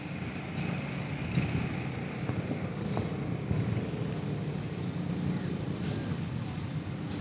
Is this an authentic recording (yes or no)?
yes